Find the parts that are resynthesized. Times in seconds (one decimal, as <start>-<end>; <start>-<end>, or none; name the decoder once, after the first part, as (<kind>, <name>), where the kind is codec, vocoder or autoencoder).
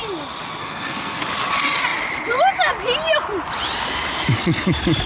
0.6-1.2 (codec, SNAC)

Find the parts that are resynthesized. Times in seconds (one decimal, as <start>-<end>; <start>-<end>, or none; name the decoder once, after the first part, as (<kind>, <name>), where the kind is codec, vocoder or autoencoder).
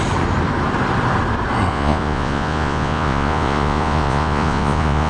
1.7-5.1 (vocoder, Vocos)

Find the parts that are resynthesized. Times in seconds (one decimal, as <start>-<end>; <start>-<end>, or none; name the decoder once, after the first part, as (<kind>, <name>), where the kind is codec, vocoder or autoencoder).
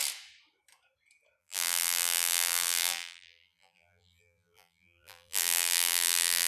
1.4-6.5 (vocoder, BigVGAN v2)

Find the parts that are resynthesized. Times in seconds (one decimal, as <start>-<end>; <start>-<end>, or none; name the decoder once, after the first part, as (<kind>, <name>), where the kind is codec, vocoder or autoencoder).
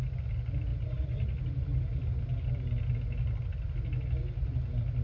none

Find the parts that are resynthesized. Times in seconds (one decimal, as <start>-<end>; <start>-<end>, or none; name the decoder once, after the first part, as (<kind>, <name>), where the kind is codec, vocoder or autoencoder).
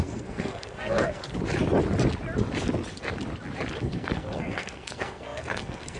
0.0-1.2 (codec, SNAC); 3.8-6.0